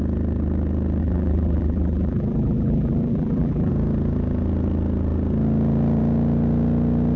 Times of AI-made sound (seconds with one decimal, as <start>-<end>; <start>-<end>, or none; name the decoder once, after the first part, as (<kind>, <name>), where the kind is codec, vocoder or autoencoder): 1.0-3.7 (vocoder, BigVGAN v2)